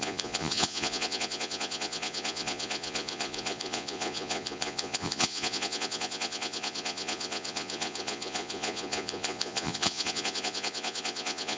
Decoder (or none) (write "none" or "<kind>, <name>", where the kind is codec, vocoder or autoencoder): vocoder, Vocos